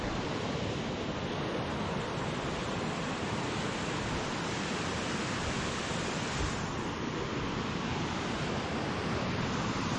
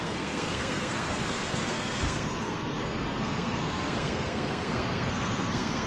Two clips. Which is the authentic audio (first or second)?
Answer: first